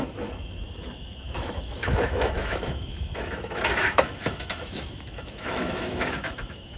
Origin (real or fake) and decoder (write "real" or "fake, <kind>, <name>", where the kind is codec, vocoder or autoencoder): fake, autoencoder, DAC-VAE